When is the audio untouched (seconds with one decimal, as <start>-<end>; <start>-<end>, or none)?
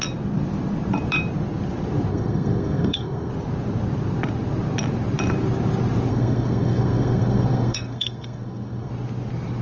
0.0-2.1; 3.3-6.1; 8.9-9.6